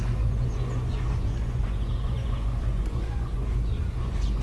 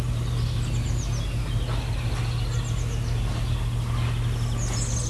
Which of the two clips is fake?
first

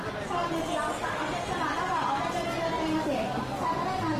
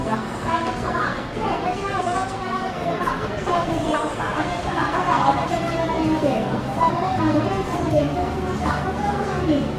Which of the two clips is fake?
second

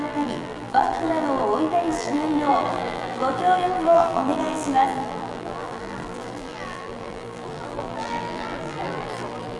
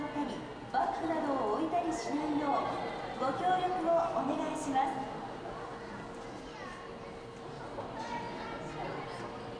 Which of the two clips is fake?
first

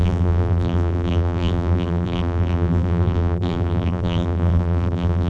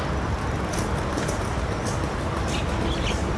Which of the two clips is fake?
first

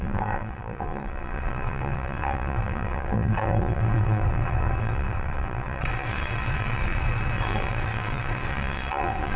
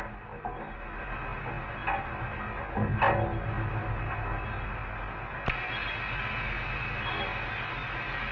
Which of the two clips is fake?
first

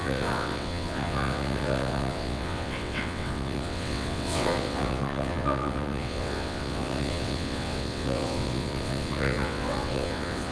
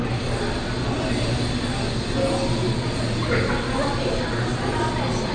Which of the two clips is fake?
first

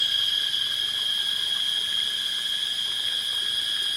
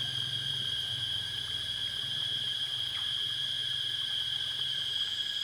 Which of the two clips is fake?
second